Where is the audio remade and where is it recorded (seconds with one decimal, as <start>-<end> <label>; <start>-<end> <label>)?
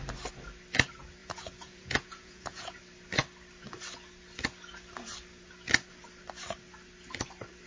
0.0-1.2 recorded; 1.2-2.8 remade; 2.8-7.7 recorded